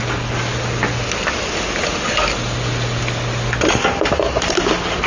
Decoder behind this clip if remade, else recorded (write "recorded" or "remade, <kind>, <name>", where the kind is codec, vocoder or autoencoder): recorded